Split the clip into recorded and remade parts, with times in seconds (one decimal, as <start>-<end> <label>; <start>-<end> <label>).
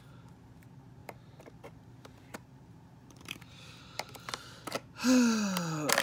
0.0-1.0 recorded; 1.0-4.3 remade; 4.3-6.0 recorded